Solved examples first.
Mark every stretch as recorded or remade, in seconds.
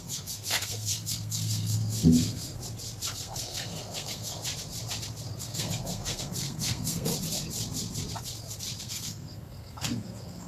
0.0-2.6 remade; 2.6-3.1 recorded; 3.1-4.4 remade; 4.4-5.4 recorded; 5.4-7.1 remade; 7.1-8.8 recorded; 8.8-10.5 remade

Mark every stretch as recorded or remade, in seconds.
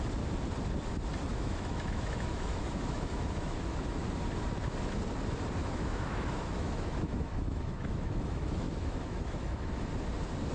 0.0-1.3 recorded; 1.3-4.0 remade; 4.0-5.6 recorded; 5.6-9.9 remade; 9.9-10.5 recorded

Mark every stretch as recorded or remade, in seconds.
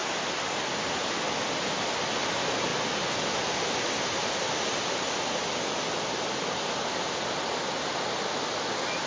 0.0-9.1 recorded